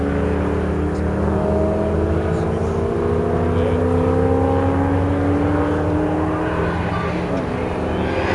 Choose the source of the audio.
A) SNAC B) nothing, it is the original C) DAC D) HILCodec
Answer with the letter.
B